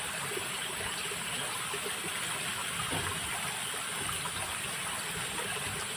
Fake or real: real